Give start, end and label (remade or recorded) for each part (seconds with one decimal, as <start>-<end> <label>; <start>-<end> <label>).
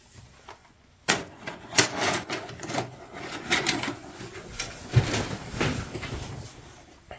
0.0-0.6 recorded; 0.6-4.9 remade; 4.9-7.2 recorded